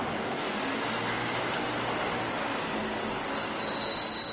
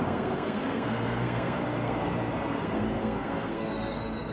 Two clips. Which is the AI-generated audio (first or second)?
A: second